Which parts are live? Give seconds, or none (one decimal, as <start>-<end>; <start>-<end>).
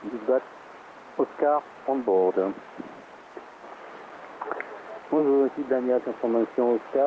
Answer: 0.0-1.8; 2.3-3.4; 4.7-5.2; 6.0-7.1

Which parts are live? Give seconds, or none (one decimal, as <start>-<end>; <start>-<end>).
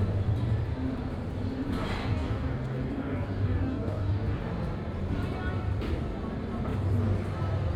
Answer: 0.0-2.0; 4.4-7.8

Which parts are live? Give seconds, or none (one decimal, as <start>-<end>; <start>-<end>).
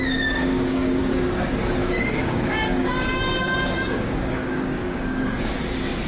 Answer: 0.0-0.4; 1.0-1.8; 5.5-6.1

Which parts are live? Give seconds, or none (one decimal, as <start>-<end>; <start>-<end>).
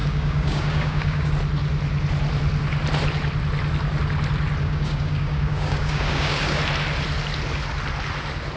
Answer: 1.3-4.6; 6.6-8.6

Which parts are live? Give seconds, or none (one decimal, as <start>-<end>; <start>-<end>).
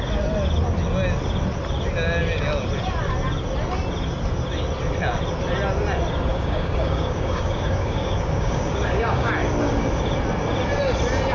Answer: 0.0-6.3; 9.3-11.3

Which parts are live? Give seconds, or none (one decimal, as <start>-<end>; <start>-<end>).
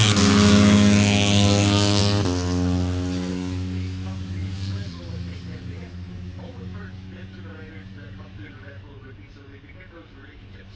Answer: 2.0-3.3